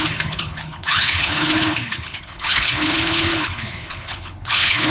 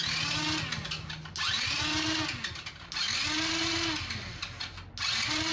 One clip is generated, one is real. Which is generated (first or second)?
first